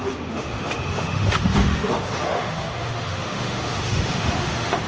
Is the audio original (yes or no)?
no